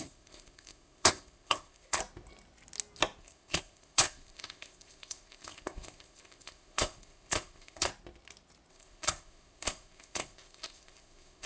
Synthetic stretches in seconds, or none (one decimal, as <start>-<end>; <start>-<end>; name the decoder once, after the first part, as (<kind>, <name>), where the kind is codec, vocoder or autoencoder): 0.0-2.0 (codec, ZipCodec); 3.2-7.9; 8.7-11.5